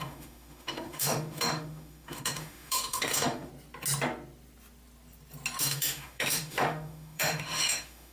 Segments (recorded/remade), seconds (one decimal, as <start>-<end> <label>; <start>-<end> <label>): 0.0-3.5 remade; 3.5-5.6 recorded; 5.6-8.1 remade